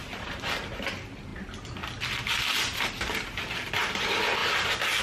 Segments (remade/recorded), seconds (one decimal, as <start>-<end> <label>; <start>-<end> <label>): 0.0-5.0 recorded